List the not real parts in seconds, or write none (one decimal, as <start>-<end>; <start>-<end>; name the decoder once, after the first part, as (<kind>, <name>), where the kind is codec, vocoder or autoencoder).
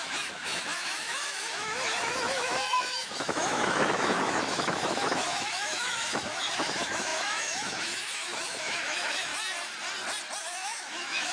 0.0-9.3 (autoencoder, DAC-VAE); 10.4-11.3